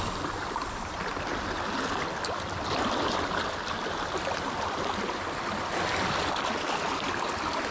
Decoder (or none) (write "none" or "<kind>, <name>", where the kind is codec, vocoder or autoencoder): none